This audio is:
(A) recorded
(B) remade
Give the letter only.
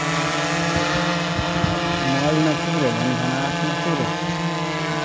A